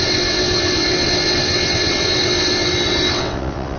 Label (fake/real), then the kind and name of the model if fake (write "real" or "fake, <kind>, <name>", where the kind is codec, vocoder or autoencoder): fake, vocoder, WaveNeXt